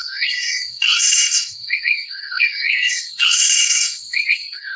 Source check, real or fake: fake